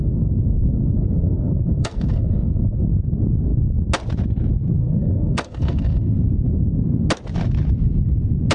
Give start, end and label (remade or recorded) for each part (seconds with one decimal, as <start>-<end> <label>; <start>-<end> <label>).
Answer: 0.0-2.9 remade; 2.9-4.8 recorded; 4.8-6.2 remade; 6.2-8.5 recorded